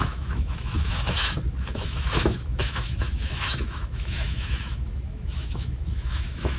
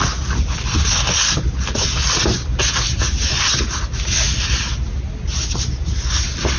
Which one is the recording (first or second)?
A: second